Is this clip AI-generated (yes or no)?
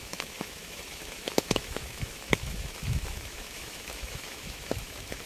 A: yes